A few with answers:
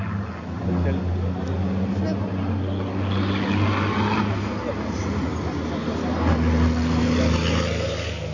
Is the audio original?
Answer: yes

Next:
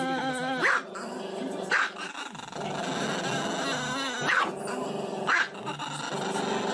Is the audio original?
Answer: yes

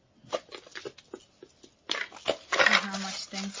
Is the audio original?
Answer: yes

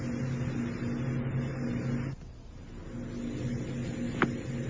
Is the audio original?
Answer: yes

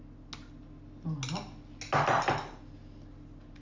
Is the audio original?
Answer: yes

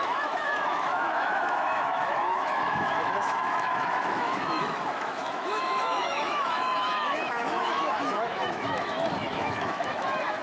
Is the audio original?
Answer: no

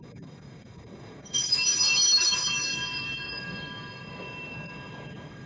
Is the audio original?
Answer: no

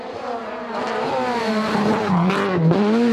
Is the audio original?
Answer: no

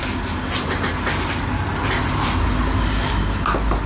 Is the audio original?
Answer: yes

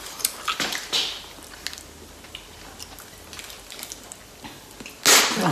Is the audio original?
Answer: yes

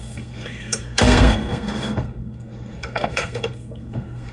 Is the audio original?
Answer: no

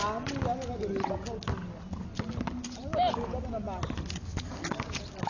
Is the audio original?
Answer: yes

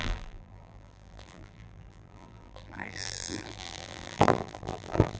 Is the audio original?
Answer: no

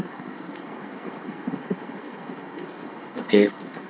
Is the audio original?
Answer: no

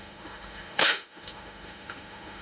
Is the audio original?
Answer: no